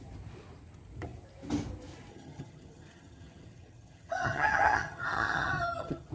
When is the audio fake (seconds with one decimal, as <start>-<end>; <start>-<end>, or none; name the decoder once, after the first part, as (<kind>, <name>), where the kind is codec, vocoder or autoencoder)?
2.1-6.1 (vocoder, HiFi-GAN)